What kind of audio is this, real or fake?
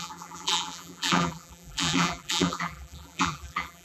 fake